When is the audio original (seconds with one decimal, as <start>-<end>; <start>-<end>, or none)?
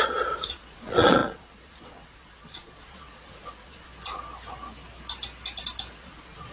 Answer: 3.9-5.9